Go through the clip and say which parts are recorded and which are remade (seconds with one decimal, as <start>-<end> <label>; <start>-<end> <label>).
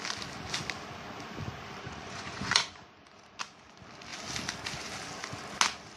0.0-1.8 recorded; 1.8-2.8 remade; 2.8-6.0 recorded